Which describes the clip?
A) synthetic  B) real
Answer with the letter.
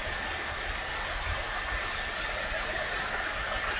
B